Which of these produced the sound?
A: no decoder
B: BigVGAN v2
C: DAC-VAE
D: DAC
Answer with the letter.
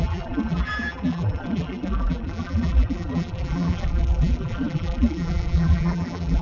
B